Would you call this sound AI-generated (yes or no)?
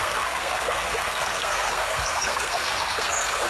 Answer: yes